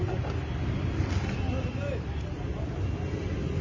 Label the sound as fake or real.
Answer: real